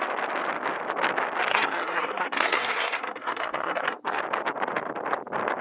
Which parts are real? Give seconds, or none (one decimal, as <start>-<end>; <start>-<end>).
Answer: 0.0-1.5; 4.2-5.6